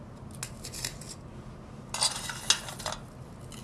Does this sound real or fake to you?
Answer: real